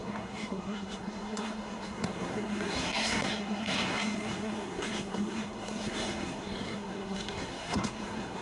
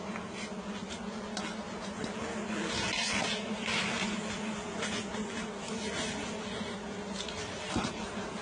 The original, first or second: second